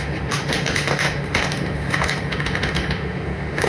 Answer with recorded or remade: remade